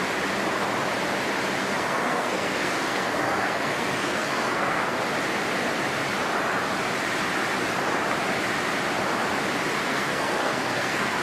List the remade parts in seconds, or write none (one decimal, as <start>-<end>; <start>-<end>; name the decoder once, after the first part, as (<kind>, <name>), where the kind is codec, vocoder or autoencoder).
1.6-5.0 (codec, SNAC); 9.8-11.2

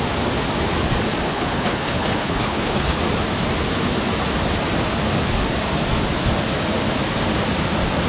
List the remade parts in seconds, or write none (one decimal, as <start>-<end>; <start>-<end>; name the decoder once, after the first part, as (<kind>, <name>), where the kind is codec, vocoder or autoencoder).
1.3-3.0 (codec, HILCodec)

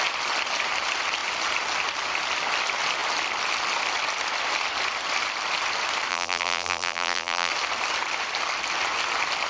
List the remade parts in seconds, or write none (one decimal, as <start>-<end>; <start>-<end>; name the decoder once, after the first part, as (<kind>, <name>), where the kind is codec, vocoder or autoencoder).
6.1-7.5 (vocoder, BigVGAN v2)

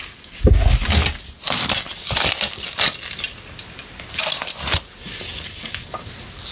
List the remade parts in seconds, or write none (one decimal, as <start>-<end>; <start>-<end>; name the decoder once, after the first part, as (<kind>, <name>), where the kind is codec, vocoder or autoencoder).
none